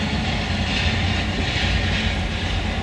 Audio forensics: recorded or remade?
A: recorded